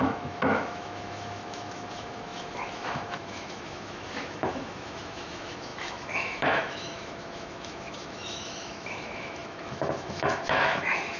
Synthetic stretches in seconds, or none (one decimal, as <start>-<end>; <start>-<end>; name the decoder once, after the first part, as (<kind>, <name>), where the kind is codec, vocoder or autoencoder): 0.0-11.2 (autoencoder, DAC-VAE)

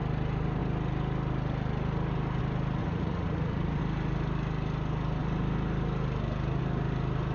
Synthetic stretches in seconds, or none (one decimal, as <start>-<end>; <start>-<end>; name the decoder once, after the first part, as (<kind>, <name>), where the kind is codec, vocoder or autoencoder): 2.8-3.8 (vocoder, Vocos)

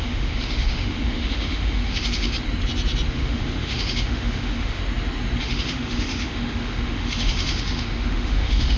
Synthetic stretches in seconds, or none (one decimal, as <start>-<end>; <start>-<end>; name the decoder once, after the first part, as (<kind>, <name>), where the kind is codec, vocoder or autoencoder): 0.0-2.3 (autoencoder, DAC-VAE); 3.1-4.8; 5.4-8.8

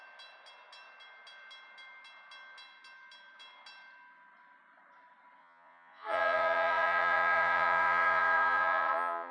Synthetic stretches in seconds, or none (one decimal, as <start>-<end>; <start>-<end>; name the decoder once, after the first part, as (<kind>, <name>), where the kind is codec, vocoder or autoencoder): 5.4-9.3 (vocoder, Vocos)

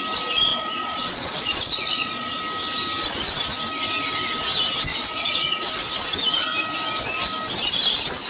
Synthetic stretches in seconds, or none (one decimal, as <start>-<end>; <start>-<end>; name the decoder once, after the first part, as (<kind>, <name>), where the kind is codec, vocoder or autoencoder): 0.5-2.4 (vocoder, Vocos); 4.9-5.7

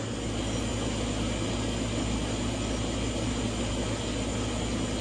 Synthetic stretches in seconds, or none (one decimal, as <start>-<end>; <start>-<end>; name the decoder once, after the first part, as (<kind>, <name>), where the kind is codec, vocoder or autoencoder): none

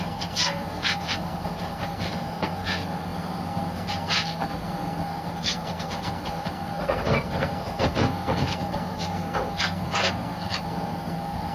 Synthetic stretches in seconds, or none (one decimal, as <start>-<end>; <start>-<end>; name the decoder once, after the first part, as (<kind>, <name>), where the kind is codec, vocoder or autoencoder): 0.0-11.5 (codec, SNAC)